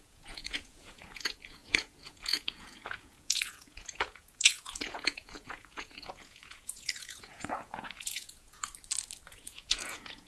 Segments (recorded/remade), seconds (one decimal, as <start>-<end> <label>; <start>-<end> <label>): 0.0-8.7 remade; 8.7-9.3 recorded; 9.3-10.3 remade